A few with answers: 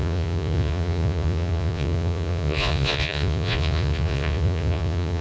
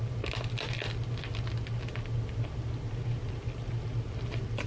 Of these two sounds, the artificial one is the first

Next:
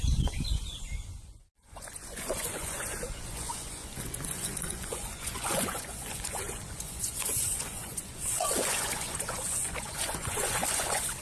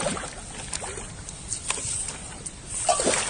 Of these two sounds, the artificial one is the first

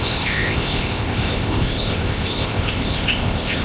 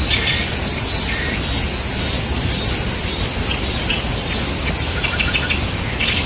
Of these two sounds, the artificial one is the first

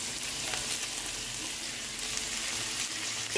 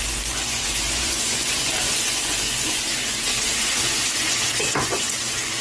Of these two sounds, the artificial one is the second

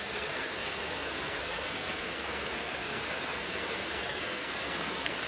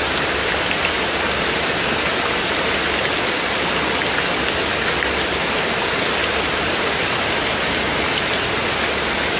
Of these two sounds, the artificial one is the first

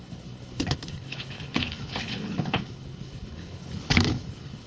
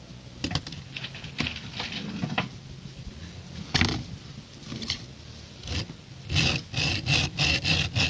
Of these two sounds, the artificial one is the first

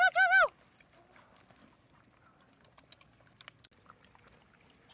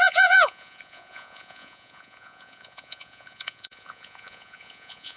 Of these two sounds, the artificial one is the second